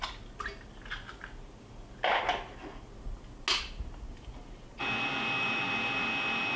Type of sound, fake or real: real